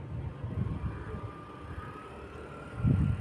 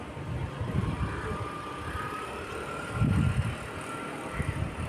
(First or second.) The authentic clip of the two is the first